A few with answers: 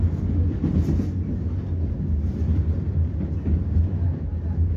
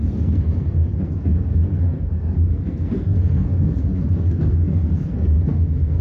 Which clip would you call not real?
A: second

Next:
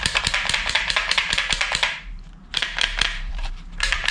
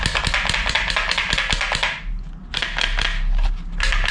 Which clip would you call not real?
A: first